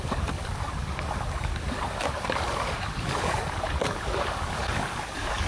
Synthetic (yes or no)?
yes